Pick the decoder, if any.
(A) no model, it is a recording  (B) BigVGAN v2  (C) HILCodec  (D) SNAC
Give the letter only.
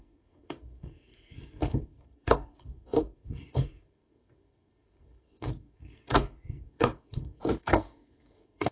D